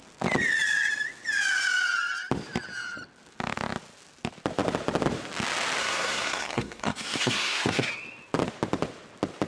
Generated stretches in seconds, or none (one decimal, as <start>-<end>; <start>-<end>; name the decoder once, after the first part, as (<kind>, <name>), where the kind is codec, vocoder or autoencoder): 5.8-7.9 (codec, SNAC)